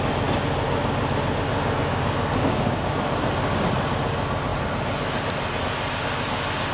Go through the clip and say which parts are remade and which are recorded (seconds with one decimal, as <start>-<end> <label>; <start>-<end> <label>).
0.0-1.5 recorded; 1.5-2.9 remade; 2.9-6.7 recorded